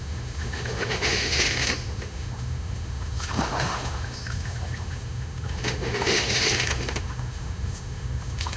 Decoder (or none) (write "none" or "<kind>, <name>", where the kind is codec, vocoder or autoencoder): autoencoder, DAC-VAE